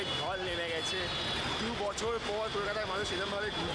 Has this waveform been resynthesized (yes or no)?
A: no